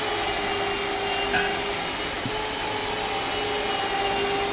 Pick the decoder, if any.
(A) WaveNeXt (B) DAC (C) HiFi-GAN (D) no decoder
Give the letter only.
D